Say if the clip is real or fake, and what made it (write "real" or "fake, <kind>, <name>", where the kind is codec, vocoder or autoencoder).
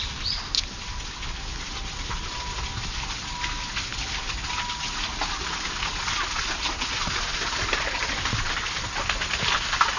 real